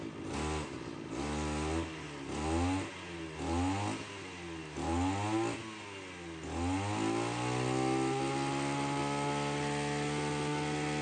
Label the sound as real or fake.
real